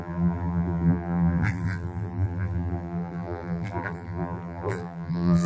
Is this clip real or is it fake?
fake